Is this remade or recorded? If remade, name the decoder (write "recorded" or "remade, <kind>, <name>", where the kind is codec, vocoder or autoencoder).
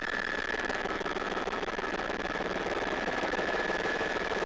remade, autoencoder, DAC-VAE